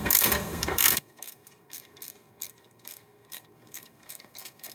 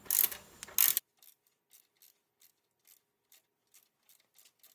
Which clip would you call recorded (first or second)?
second